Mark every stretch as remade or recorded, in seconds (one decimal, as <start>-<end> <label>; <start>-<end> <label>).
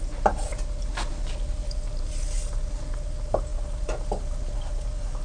0.0-5.2 recorded